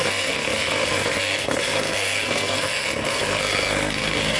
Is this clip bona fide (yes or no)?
no